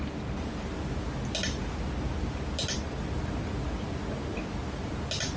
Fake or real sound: real